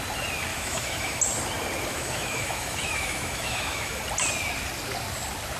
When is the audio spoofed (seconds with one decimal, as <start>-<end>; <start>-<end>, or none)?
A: 0.5-1.2; 1.9-4.0